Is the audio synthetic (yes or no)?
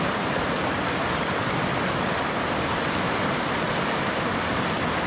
no